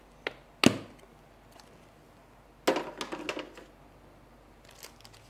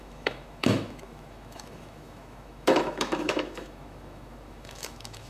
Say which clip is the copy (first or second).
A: second